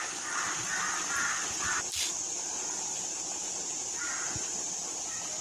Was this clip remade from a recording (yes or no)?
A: no